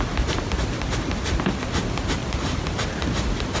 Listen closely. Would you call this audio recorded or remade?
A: recorded